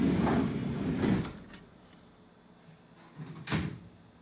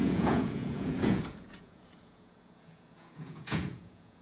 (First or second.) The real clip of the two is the first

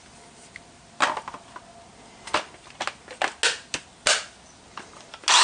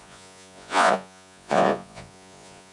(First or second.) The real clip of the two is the first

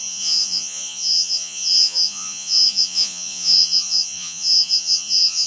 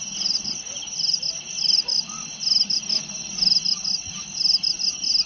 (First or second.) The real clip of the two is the second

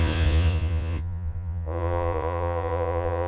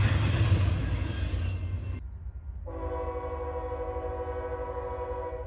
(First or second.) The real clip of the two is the second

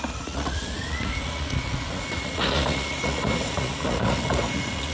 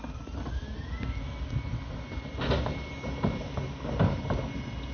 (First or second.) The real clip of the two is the second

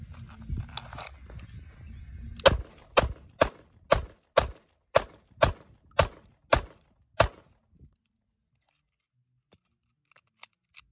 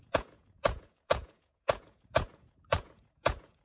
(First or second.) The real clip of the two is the first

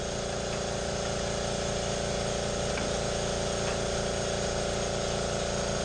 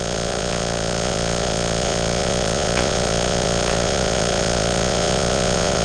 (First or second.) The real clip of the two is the first